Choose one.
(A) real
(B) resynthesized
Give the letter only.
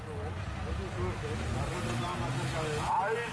A